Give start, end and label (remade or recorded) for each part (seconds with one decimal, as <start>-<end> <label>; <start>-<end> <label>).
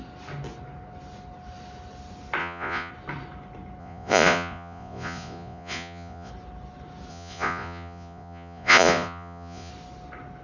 0.0-2.4 recorded; 2.4-2.9 remade; 2.9-3.8 recorded; 3.8-6.3 remade; 6.3-7.1 recorded; 7.1-9.7 remade; 9.7-10.4 recorded